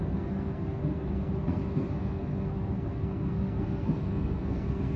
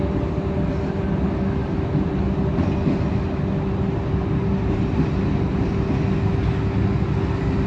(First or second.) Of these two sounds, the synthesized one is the first